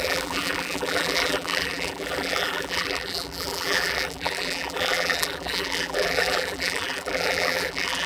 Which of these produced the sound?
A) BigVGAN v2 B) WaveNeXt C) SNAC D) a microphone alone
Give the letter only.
A